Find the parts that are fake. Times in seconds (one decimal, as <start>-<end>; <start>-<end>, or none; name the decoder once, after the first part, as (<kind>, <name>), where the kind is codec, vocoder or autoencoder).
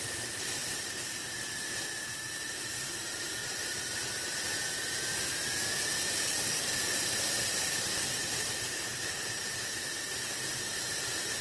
0.0-11.4 (vocoder, BigVGAN v2)